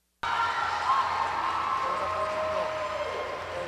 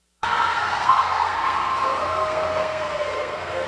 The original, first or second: first